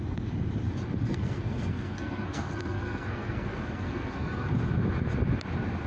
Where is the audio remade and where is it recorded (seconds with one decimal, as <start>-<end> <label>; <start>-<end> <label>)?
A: 0.0-1.0 recorded; 1.0-4.5 remade; 4.5-5.9 recorded